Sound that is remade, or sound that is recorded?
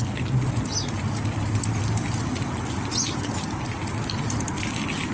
recorded